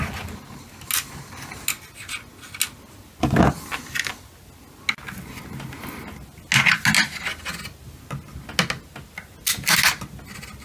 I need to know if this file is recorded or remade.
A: recorded